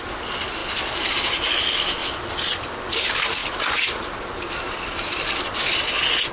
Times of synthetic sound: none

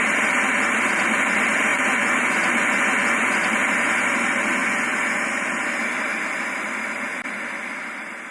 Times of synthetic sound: 1.7-3.5 (vocoder, Vocos); 4.6-5.4

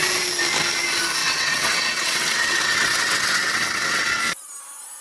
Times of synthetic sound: 1.2-4.2 (vocoder, WaveNeXt)

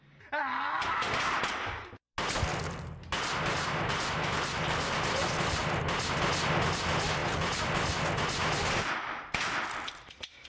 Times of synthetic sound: none

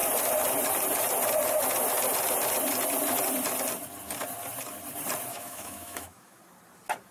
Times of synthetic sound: 5.3-6.4 (autoencoder, DAC-VAE)

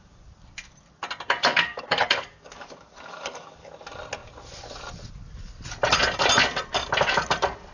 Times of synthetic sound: 1.5-3.7 (codec, DAC)